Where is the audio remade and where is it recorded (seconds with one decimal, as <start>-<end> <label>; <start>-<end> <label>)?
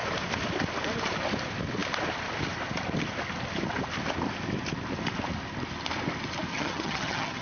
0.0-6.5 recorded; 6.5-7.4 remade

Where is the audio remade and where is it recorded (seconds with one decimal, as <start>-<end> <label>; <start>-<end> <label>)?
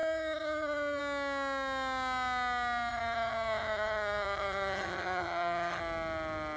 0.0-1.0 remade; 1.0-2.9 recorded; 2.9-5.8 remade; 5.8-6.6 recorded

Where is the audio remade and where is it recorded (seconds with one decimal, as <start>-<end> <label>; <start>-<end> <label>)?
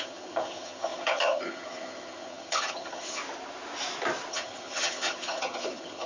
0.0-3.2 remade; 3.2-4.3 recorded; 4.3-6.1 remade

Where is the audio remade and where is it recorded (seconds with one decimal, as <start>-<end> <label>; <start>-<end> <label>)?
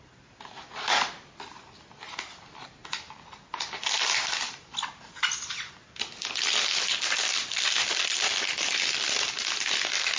0.0-10.2 recorded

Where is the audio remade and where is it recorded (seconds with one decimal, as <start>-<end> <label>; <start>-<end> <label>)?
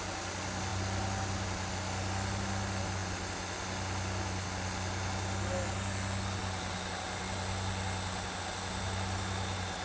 0.0-9.8 recorded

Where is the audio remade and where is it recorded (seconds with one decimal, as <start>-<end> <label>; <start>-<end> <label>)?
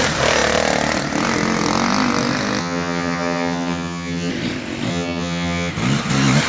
0.0-2.6 recorded; 2.6-4.3 remade; 4.3-4.9 recorded; 4.9-5.7 remade; 5.7-6.5 recorded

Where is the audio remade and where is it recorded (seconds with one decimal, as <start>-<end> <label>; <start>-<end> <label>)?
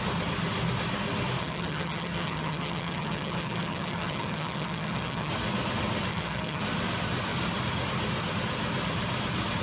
0.0-1.4 recorded; 1.4-5.3 remade; 5.3-6.1 recorded; 6.1-6.6 remade; 6.6-9.6 recorded